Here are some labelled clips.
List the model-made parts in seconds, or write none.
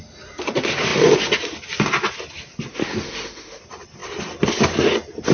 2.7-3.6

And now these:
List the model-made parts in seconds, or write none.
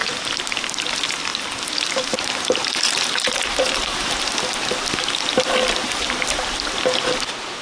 none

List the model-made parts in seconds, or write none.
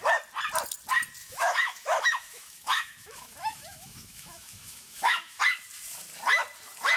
1.2-5.4